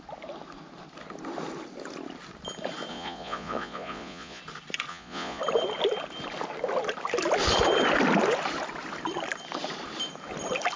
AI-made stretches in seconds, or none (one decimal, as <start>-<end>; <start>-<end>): 2.9-4.4; 4.9-5.4